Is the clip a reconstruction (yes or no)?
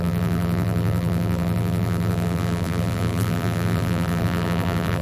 yes